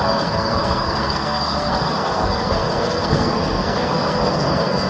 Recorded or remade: remade